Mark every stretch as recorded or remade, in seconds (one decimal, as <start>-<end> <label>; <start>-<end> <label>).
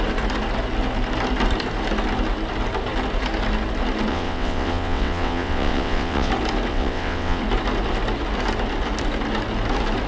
0.0-4.1 recorded; 4.1-6.3 remade; 6.3-6.7 recorded; 6.7-7.4 remade; 7.4-10.1 recorded